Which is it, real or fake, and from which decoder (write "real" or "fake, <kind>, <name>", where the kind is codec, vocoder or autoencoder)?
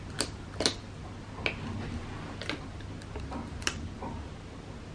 real